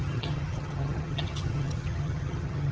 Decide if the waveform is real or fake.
fake